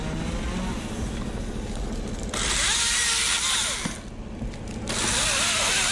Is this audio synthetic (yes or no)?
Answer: no